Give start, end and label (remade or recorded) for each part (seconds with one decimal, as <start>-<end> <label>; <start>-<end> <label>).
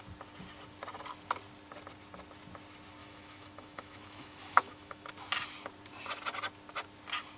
0.0-3.0 recorded; 3.0-5.1 remade; 5.1-7.4 recorded